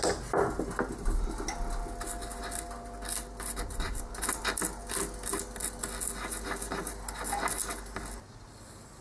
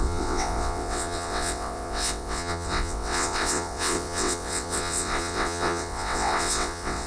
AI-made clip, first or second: second